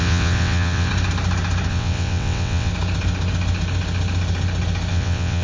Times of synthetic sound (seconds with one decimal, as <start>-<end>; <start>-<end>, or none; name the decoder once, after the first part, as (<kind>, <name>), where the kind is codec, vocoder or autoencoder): 0.0-0.9 (vocoder, WaveNeXt); 1.7-2.7; 4.9-5.4